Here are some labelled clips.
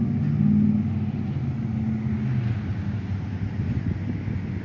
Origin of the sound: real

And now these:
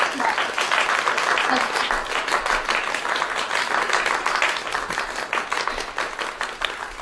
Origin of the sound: real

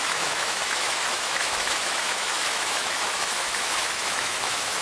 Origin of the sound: fake